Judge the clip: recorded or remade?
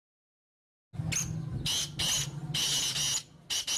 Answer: recorded